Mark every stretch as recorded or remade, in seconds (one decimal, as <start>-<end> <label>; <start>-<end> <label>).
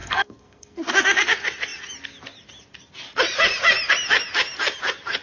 0.0-0.9 remade; 0.9-5.2 recorded